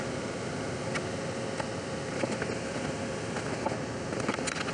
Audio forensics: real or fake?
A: real